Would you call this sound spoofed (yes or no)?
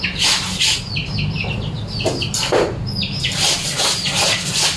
no